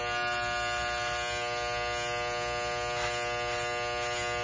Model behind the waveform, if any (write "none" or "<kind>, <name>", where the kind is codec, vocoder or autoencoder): none